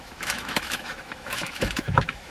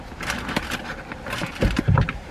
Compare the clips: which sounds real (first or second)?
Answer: second